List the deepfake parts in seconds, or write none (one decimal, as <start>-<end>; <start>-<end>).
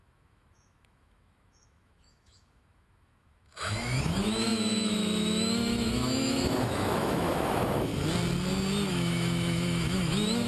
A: 0.0-7.9; 8.9-10.5